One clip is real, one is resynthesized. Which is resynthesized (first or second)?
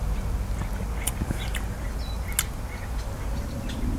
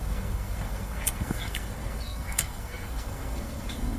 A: second